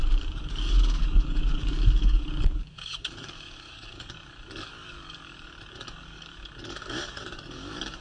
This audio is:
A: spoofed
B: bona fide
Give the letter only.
A